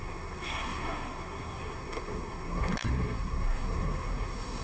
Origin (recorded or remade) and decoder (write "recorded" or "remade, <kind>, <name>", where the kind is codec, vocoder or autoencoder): remade, codec, SNAC